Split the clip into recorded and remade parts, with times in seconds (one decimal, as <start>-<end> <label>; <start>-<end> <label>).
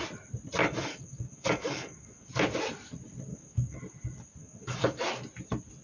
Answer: 0.0-0.6 recorded; 0.6-2.3 remade; 2.3-3.3 recorded; 3.3-3.8 remade; 3.8-4.4 recorded; 4.4-5.0 remade; 5.0-5.8 recorded